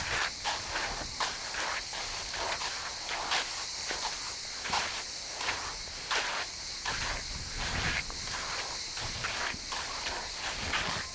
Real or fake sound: real